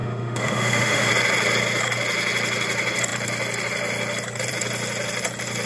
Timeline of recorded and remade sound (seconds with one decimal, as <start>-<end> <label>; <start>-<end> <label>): 0.0-1.1 remade; 1.1-5.7 recorded